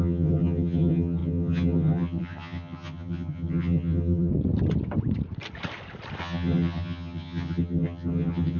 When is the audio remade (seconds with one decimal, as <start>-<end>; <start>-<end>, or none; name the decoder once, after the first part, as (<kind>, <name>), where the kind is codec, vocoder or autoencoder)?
0.0-4.3 (vocoder, HiFi-GAN); 6.2-8.6